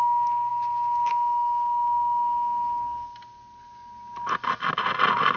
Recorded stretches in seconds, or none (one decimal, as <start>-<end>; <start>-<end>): 0.0-5.4